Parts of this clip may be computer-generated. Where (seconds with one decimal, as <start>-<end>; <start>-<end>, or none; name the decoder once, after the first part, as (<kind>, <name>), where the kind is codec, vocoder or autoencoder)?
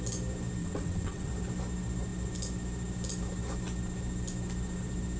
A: 0.6-1.3 (vocoder, WaveNeXt)